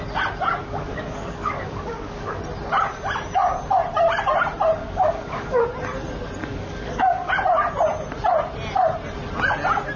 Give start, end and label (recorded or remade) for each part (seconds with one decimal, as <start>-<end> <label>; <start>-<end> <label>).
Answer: 0.0-0.6 recorded; 0.6-2.4 remade; 2.4-4.8 recorded; 4.8-5.6 remade; 5.6-6.4 recorded; 6.4-7.3 remade; 7.3-10.0 recorded